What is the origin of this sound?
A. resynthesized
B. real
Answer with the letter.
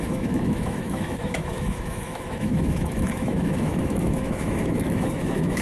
A